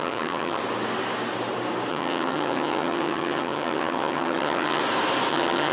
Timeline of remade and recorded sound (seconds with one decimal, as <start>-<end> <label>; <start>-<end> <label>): 0.0-0.6 remade; 0.6-1.9 recorded; 1.9-4.8 remade; 4.8-5.3 recorded; 5.3-5.7 remade